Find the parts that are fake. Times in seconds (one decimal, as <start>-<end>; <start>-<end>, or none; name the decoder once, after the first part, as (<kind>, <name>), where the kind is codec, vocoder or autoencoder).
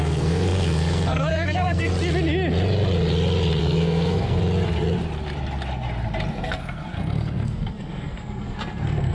0.0-1.9 (codec, SNAC); 3.6-4.4; 6.3-9.1